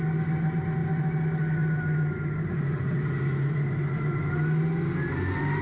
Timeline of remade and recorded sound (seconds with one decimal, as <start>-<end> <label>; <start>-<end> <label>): 0.0-5.6 recorded